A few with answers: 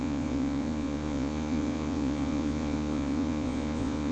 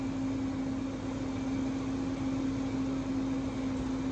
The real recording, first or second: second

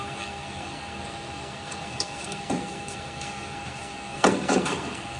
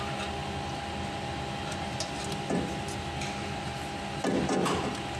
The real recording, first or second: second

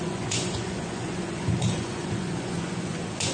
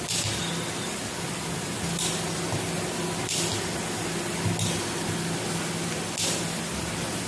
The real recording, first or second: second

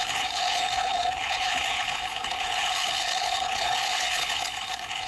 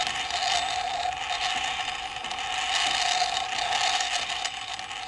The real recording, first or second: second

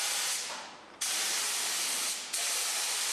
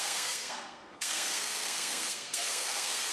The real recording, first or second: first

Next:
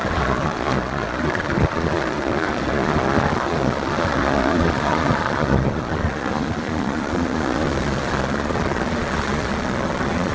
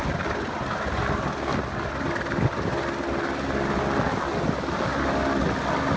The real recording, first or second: second